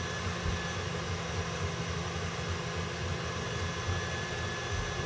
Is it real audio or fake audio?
real